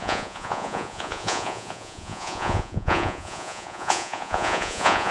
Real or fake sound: fake